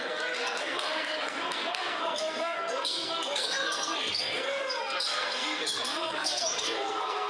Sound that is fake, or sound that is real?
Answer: fake